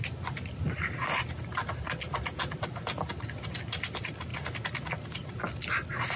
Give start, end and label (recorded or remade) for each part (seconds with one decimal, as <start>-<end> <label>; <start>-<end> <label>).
0.0-6.2 recorded